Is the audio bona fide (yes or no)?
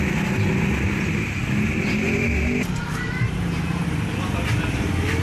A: yes